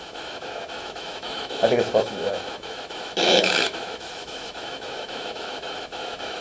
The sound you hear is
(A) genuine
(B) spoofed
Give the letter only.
B